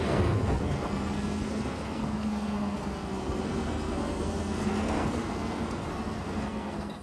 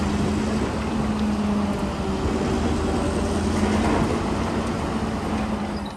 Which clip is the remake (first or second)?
first